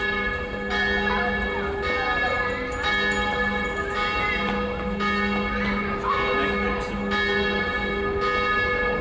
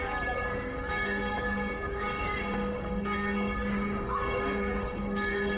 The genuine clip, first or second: first